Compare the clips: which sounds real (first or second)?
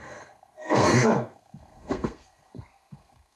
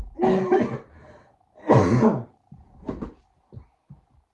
second